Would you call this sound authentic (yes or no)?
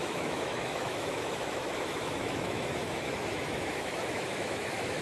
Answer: no